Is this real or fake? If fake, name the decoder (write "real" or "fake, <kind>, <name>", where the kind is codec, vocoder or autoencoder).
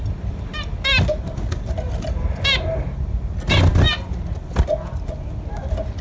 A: real